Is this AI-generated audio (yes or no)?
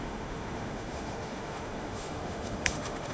yes